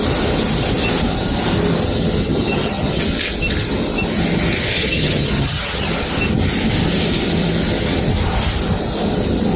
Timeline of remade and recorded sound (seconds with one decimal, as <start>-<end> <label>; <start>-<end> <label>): 0.0-2.2 recorded; 2.2-3.0 remade; 3.0-4.7 recorded; 4.7-5.9 remade; 5.9-9.6 recorded